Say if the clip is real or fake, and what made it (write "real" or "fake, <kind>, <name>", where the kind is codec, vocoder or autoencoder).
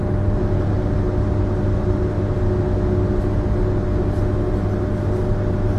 real